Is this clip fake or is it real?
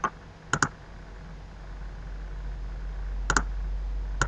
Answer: real